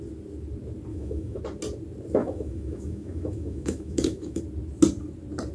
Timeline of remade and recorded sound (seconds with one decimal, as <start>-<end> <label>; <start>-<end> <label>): 0.0-0.9 recorded; 0.9-1.4 remade; 1.4-2.2 recorded; 2.2-4.4 remade; 4.4-5.5 recorded

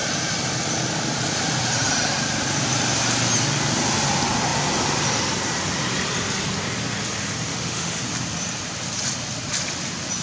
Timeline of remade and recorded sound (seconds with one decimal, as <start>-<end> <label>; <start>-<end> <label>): 0.0-7.5 recorded; 7.5-8.0 remade; 8.0-10.2 recorded

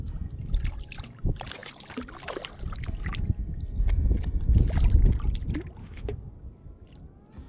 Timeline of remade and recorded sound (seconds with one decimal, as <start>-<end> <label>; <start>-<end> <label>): 0.0-5.8 recorded; 5.8-6.3 remade; 6.3-7.5 recorded